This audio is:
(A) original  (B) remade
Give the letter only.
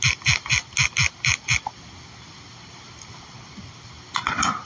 A